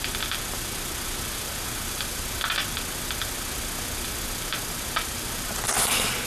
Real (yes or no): yes